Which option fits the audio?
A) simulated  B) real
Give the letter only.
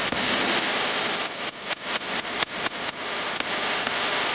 B